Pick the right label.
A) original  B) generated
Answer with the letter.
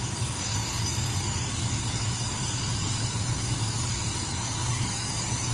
B